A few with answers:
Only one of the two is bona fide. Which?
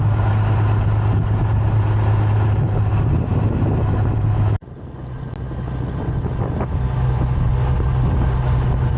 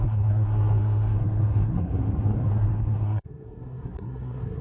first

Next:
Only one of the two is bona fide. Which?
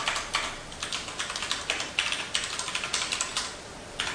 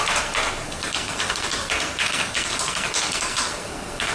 first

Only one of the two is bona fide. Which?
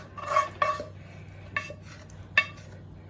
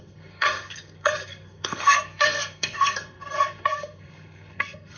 first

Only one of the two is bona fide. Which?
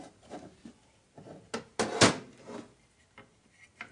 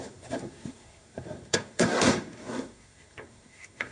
first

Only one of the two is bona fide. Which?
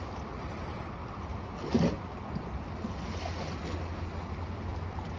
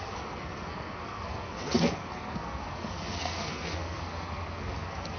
first